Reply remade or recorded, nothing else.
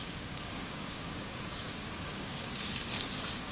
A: remade